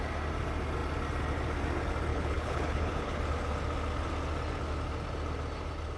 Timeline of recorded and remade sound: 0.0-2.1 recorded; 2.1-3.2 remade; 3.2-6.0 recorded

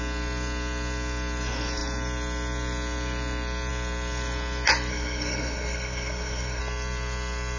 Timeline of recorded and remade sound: 0.0-4.9 recorded; 4.9-6.6 remade; 6.6-7.6 recorded

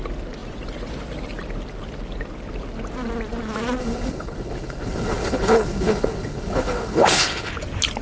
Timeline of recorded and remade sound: 0.0-3.8 recorded; 3.8-7.5 remade; 7.5-8.0 recorded

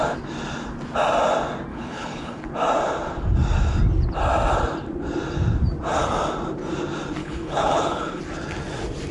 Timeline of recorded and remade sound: 0.0-1.7 recorded; 1.7-2.4 remade; 2.4-7.2 recorded; 7.2-8.2 remade; 8.2-9.1 recorded

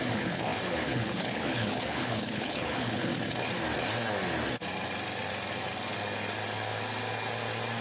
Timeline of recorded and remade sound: 0.0-3.1 remade; 3.1-7.8 recorded

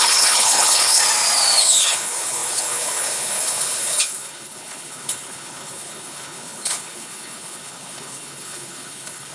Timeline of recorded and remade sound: 0.0-1.0 remade; 1.0-1.6 recorded; 1.6-9.3 remade